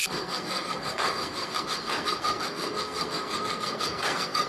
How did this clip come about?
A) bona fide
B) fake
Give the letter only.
B